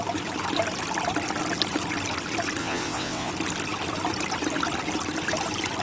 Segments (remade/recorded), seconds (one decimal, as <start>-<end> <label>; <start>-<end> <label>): 0.0-2.6 recorded; 2.6-3.3 remade; 3.3-5.8 recorded